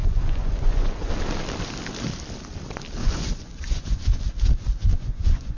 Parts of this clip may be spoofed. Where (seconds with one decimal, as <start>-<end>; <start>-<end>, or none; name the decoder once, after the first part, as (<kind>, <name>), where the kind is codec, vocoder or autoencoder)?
0.0-1.1 (vocoder, Vocos); 3.0-4.2; 4.8-5.6